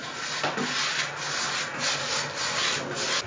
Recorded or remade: recorded